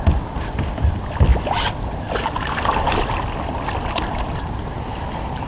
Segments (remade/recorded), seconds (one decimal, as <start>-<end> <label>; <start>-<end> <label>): 0.0-5.5 recorded